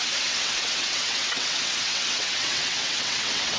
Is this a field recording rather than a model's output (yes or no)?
no